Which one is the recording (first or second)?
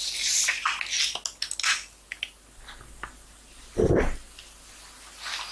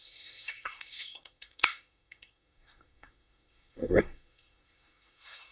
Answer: first